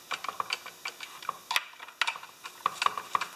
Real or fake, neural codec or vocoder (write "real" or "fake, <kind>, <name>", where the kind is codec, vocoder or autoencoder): real